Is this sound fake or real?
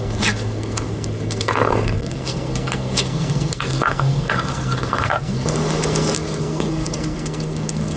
fake